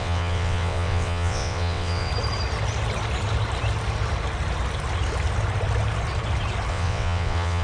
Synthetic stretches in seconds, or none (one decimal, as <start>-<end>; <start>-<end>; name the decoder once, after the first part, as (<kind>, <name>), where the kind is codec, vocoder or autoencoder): 0.0-2.1 (vocoder, WaveNeXt); 6.7-7.6